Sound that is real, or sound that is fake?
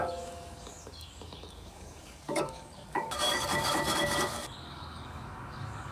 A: fake